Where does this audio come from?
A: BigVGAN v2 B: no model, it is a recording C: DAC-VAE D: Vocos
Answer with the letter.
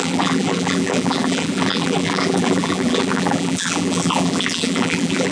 A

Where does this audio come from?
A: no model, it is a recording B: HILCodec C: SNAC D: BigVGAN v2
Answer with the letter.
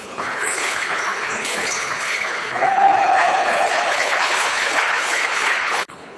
B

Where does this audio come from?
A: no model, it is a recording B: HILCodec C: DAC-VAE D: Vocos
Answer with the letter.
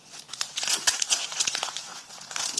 D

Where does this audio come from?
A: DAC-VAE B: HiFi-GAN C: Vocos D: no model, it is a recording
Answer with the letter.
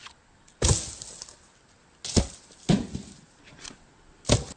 D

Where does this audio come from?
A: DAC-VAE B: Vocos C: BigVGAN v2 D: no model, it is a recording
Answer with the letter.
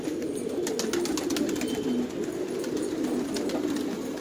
D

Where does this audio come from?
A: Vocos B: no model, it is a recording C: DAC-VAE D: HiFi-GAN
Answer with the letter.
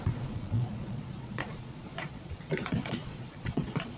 A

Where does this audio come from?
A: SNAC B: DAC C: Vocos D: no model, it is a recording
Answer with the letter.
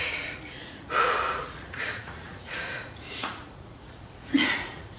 C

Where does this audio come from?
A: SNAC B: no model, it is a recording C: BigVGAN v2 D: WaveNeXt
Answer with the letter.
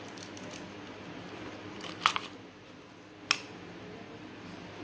B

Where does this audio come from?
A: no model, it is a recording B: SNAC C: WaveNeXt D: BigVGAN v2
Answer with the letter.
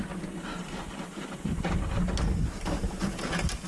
A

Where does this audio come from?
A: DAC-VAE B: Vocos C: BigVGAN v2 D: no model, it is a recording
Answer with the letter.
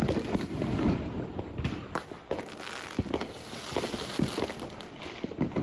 D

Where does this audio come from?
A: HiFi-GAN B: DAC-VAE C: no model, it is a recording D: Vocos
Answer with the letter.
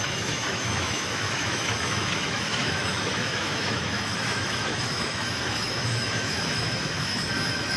B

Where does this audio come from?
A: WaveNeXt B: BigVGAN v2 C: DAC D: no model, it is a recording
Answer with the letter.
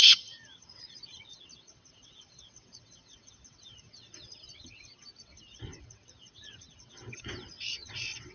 A